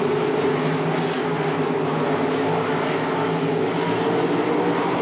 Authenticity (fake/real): real